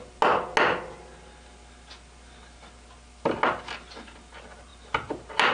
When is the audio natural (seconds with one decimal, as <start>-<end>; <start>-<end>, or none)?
0.0-5.5